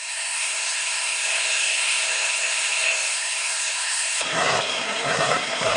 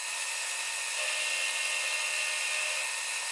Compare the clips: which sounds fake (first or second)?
first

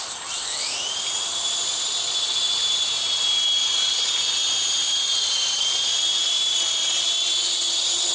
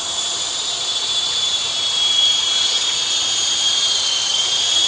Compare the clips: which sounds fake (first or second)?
second